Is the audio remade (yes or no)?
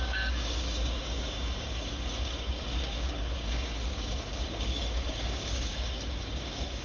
yes